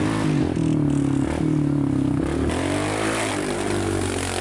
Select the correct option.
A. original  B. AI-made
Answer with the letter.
A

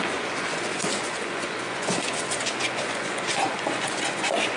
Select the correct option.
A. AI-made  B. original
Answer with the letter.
A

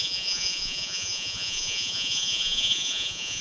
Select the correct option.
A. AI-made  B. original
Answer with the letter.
A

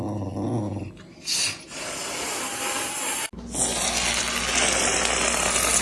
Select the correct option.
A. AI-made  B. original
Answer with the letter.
B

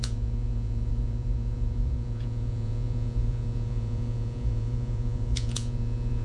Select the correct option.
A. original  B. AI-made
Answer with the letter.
B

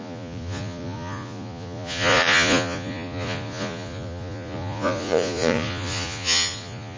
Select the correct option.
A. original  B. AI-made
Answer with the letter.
B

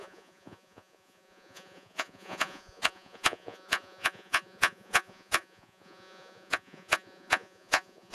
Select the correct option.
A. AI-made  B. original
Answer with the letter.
A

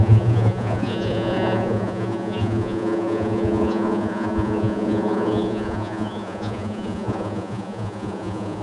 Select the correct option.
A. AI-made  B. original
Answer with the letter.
A